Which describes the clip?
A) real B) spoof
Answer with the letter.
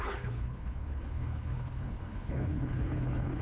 B